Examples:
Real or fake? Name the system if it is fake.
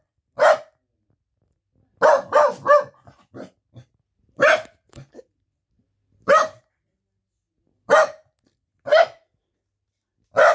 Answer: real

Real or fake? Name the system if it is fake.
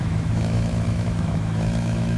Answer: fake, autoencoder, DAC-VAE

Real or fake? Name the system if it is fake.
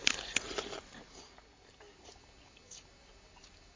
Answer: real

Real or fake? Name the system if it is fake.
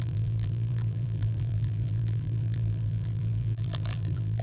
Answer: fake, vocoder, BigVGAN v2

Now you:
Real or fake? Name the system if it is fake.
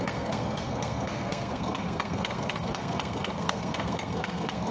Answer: fake, codec, SNAC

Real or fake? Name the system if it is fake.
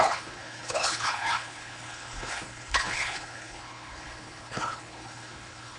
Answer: fake, codec, HILCodec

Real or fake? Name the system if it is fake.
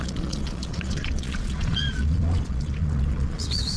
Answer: fake, vocoder, Vocos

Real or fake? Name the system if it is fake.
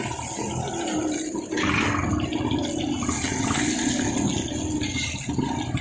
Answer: real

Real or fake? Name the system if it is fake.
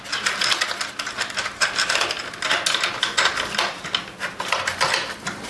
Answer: real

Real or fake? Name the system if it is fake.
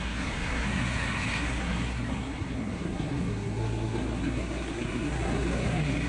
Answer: fake, codec, SNAC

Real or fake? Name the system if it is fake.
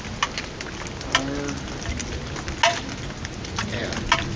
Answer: real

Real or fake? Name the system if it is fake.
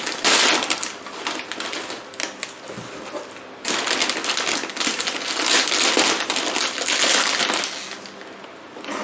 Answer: real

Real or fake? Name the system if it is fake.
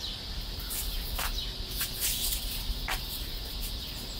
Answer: real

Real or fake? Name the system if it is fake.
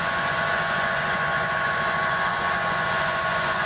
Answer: fake, vocoder, Vocos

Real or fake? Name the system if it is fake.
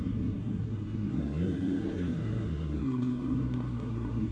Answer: fake, codec, SNAC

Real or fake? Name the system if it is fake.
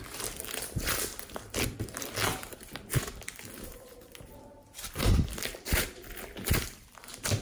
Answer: real